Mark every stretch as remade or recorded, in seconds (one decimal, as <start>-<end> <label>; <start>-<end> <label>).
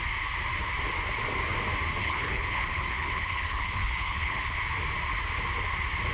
0.0-2.0 recorded; 2.0-4.6 remade; 4.6-6.1 recorded